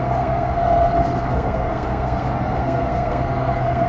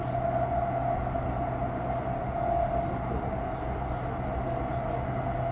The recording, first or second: second